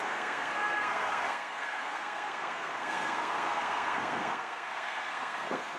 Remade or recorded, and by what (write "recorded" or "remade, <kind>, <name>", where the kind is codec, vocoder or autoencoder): remade, codec, SNAC